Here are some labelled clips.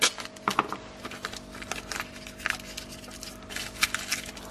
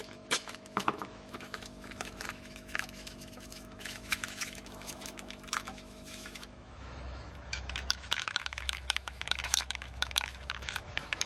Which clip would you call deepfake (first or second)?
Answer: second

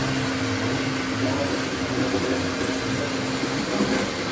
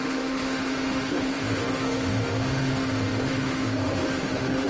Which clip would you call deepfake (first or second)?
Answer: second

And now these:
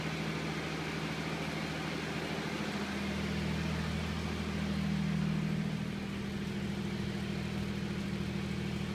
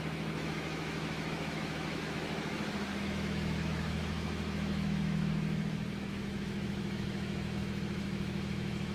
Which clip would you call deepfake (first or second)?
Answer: second